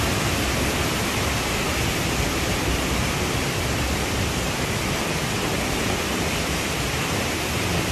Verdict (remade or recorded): remade